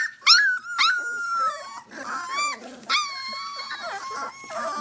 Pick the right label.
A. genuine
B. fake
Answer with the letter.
A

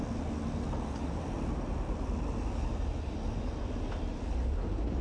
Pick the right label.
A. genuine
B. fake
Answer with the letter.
A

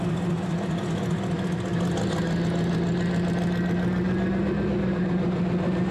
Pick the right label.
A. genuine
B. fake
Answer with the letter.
A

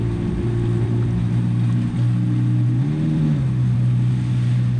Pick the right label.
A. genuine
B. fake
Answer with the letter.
A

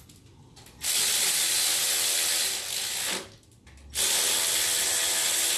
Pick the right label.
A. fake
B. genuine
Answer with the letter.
B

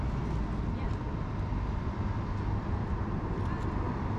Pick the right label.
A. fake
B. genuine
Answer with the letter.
B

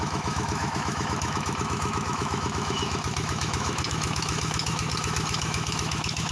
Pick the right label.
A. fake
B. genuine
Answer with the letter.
A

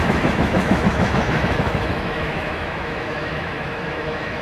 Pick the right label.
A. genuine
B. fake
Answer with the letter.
B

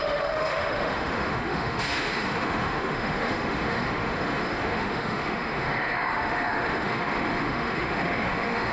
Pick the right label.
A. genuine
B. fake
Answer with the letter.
B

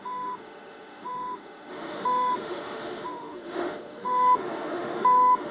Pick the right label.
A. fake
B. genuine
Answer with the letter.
A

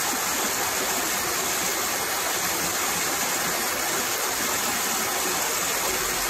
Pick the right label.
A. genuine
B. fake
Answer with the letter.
A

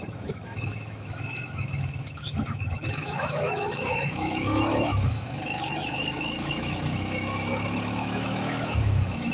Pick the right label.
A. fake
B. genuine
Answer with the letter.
A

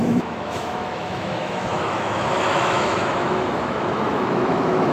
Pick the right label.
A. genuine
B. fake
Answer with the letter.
B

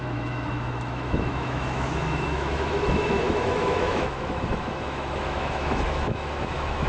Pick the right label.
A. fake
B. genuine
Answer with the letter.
A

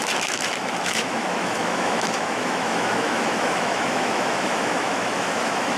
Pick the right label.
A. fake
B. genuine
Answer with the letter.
A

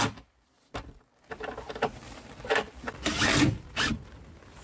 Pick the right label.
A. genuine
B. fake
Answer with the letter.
A